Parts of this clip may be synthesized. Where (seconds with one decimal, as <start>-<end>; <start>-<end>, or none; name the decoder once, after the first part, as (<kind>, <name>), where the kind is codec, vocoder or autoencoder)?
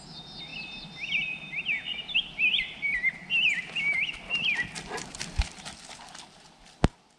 none